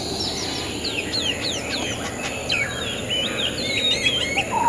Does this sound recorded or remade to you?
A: recorded